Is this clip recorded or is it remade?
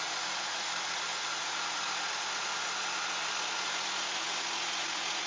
remade